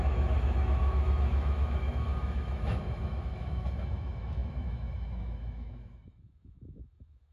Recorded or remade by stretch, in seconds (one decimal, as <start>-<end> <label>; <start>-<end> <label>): 0.0-7.3 remade